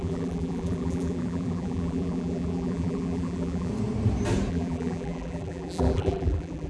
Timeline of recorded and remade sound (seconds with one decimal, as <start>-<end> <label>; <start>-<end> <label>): 0.0-3.7 remade; 3.7-4.5 recorded; 4.5-6.7 remade